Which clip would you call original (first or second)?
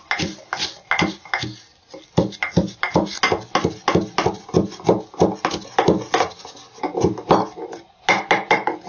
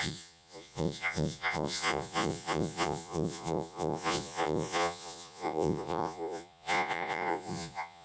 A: first